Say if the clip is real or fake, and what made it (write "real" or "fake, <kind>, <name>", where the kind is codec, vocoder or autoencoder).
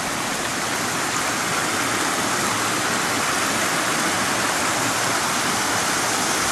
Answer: real